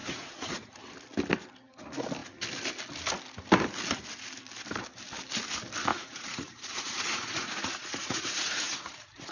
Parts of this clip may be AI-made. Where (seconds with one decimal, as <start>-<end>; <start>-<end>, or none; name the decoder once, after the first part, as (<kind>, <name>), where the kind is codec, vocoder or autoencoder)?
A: 0.0-0.7 (vocoder, Vocos); 5.9-9.3